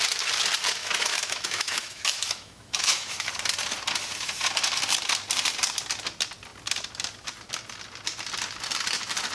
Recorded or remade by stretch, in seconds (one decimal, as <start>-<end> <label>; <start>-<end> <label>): 0.0-0.8 recorded; 0.8-3.3 remade; 3.3-9.3 recorded